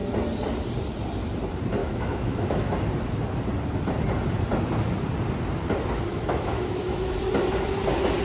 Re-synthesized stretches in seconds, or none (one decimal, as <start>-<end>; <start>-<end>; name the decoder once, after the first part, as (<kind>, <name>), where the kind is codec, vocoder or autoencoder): 1.8-2.7 (autoencoder, DAC-VAE); 6.1-7.2

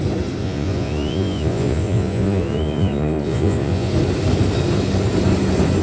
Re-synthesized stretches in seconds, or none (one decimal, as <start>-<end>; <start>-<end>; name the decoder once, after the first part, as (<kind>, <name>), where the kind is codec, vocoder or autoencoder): 0.4-3.9 (vocoder, Vocos)

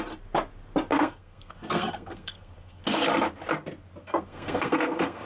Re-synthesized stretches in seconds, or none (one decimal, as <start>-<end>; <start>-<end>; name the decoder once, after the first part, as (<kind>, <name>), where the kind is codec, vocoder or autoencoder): 0.9-2.8 (codec, SNAC); 4.0-5.3